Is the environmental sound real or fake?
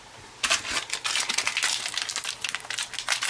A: real